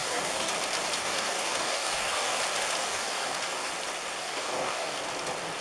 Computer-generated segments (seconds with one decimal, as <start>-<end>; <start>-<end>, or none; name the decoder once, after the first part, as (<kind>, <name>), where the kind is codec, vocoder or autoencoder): 0.0-0.5 (codec, DAC); 1.0-2.4; 2.8-3.7; 4.2-5.0